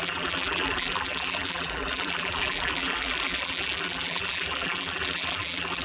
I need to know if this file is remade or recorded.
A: remade